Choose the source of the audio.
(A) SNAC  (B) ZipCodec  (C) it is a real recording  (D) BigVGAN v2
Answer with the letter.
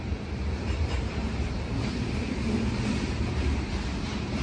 D